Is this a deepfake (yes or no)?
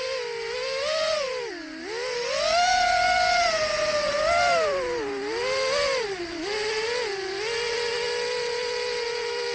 no